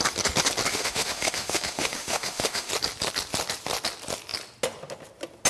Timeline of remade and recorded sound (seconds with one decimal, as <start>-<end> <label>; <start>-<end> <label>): 0.0-0.7 recorded; 0.7-2.7 remade; 2.7-5.5 recorded

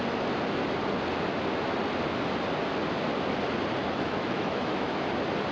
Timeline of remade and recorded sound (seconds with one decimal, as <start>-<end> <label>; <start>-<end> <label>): 0.0-3.8 recorded; 3.8-5.1 remade; 5.1-5.5 recorded